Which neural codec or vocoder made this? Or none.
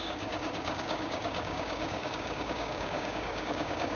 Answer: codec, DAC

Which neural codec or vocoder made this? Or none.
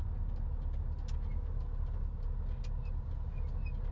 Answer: none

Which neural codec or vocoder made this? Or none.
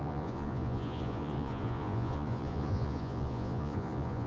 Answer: vocoder, Vocos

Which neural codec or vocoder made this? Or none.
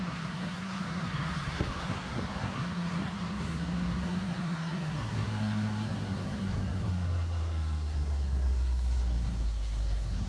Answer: codec, SNAC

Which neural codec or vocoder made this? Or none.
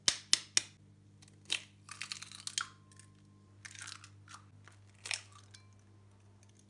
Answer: none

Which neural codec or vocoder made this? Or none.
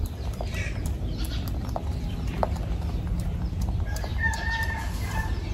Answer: vocoder, BigVGAN v2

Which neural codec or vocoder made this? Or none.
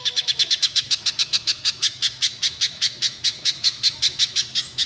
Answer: autoencoder, DAC-VAE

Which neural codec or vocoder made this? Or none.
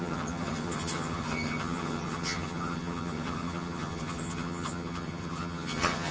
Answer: vocoder, HiFi-GAN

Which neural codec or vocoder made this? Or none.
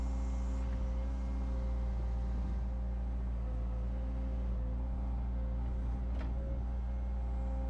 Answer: none